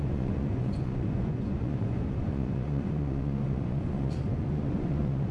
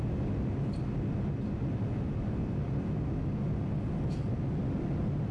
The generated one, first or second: first